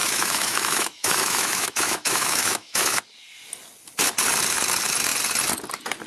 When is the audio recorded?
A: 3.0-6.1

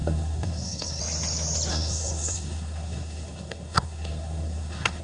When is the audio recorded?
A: 1.0-1.7

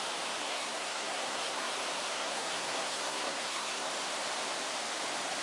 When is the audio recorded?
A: 0.0-0.4; 1.7-2.1; 3.9-5.4

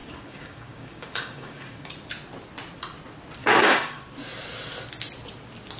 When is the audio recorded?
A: 1.9-3.4; 4.0-5.8

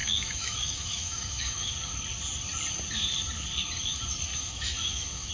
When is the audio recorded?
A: 1.7-4.3

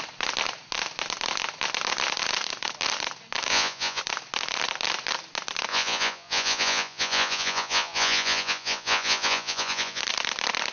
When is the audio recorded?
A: 0.0-3.5; 4.0-5.7; 10.0-10.7

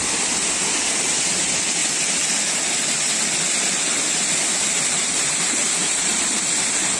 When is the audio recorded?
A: 0.0-7.0

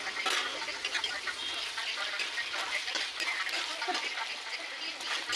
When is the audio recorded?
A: 0.0-0.8; 1.4-5.4